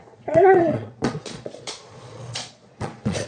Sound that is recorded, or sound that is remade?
remade